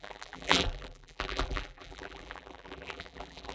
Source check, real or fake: fake